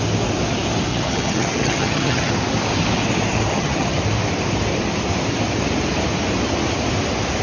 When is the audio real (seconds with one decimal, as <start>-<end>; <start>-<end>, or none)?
0.0-0.9; 2.3-3.5; 4.0-7.4